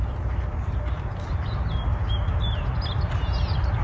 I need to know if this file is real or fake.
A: real